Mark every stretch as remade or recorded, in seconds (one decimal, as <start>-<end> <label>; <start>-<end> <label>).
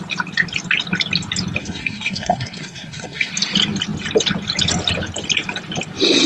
0.0-1.6 recorded; 1.6-3.3 remade; 3.3-6.3 recorded